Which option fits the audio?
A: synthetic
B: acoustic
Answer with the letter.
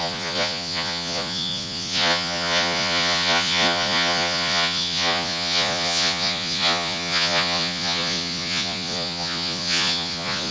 A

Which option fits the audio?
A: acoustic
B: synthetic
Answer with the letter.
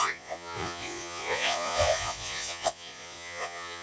B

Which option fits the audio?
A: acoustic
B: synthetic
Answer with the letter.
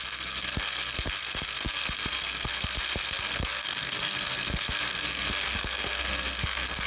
B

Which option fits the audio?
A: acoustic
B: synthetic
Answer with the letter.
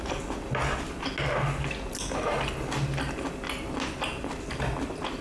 A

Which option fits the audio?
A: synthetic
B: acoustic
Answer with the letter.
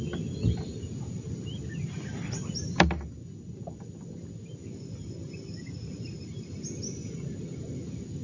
B